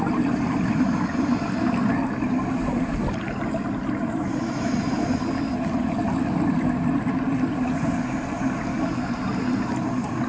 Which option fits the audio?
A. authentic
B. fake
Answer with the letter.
A